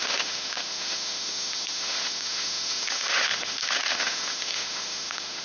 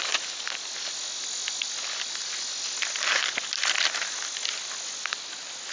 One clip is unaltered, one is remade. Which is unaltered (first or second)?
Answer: second